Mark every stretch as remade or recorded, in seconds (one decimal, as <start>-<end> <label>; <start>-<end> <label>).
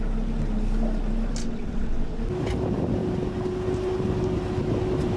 0.0-1.4 recorded; 1.4-2.2 remade; 2.2-5.2 recorded